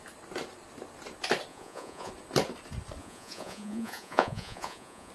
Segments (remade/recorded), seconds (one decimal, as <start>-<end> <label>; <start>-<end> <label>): 0.0-1.5 recorded; 1.5-2.1 remade; 2.1-3.0 recorded; 3.0-5.1 remade